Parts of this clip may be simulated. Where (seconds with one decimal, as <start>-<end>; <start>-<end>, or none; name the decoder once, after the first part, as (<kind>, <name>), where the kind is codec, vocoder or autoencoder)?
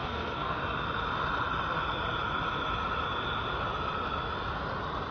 0.0-0.6 (codec, SNAC)